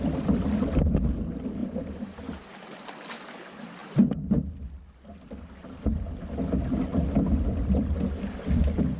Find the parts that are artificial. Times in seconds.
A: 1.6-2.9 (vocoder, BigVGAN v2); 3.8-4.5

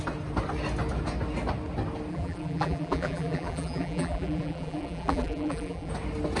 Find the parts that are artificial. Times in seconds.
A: 2.1-5.9 (vocoder, BigVGAN v2)

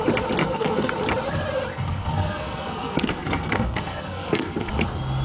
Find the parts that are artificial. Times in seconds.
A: 0.4-0.9 (codec, SNAC); 1.7-4.7

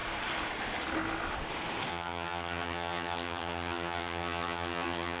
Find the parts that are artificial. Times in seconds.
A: 1.9-5.2 (vocoder, HiFi-GAN)

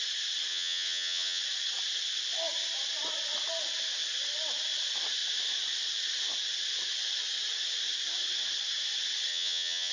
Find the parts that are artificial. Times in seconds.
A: 0.5-1.4 (vocoder, HiFi-GAN); 9.3-9.9